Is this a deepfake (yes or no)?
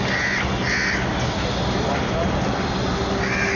no